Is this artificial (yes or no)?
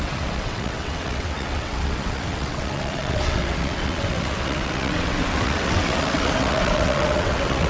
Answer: yes